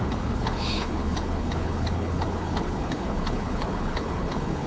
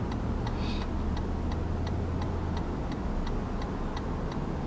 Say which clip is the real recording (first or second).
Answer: second